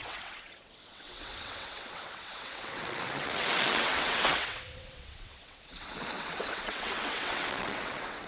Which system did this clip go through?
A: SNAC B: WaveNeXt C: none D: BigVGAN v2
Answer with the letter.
B